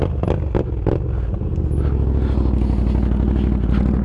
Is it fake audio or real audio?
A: real